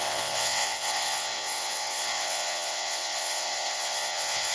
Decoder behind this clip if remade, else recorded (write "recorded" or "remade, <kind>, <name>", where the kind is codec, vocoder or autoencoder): remade, vocoder, WaveNeXt